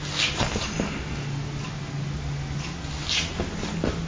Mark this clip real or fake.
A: real